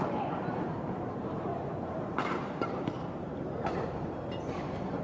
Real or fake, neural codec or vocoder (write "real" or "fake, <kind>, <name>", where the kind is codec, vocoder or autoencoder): fake, vocoder, BigVGAN v2